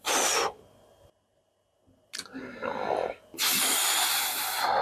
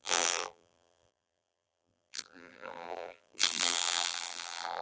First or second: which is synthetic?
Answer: second